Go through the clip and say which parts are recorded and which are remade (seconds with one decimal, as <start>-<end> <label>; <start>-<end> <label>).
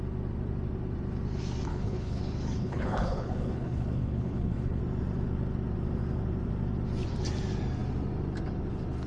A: 0.0-1.7 recorded; 1.7-2.2 remade; 2.2-2.6 recorded; 2.6-4.8 remade; 4.8-9.1 recorded